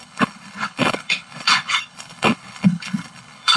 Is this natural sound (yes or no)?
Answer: no